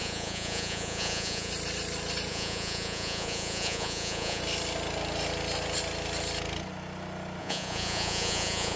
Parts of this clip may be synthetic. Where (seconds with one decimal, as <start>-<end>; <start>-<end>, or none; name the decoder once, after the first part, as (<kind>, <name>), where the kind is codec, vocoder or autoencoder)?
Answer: 0.0-1.5 (vocoder, Vocos); 2.3-4.4; 7.4-8.8